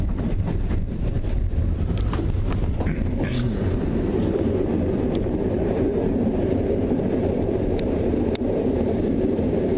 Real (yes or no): no